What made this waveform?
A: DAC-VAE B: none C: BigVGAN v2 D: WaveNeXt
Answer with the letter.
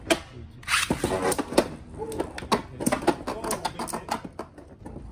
B